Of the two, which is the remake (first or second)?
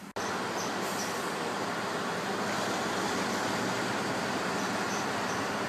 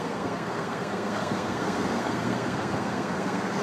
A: second